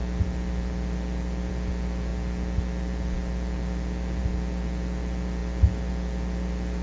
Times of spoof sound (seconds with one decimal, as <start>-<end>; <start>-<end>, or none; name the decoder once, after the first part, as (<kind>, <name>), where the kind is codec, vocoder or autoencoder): none